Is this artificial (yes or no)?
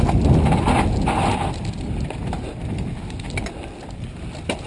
no